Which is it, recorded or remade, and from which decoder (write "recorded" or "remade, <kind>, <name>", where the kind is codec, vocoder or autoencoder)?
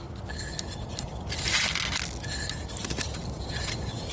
recorded